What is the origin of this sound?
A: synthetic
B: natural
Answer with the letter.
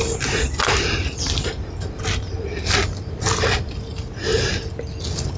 B